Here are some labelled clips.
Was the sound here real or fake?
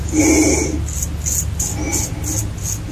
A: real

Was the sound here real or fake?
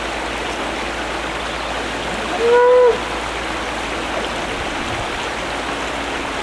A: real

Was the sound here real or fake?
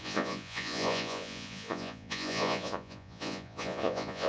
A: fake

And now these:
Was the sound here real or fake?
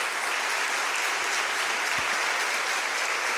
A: real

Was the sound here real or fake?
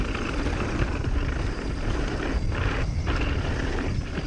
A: real